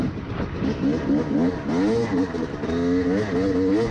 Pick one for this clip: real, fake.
real